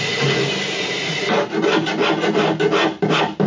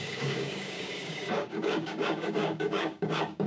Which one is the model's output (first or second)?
second